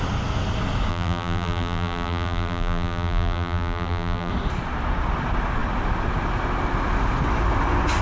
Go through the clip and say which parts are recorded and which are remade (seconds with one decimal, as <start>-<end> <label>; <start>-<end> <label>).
0.0-0.9 recorded; 0.9-4.3 remade; 4.3-8.0 recorded